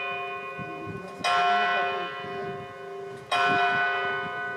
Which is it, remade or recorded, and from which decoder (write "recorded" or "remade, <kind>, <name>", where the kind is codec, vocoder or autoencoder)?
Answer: recorded